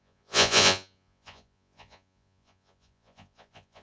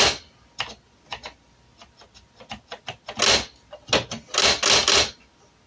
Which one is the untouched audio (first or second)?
second